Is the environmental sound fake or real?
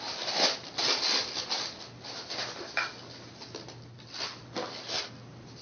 real